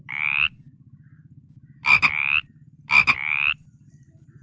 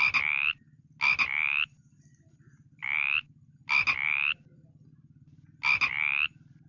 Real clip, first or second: second